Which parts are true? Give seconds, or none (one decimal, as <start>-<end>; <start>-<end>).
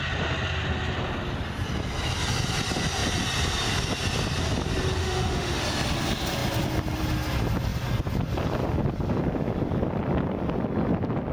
0.0-5.0; 5.6-11.3